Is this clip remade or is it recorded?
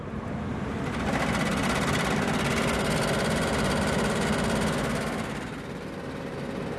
recorded